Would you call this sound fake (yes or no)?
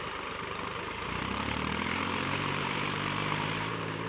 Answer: yes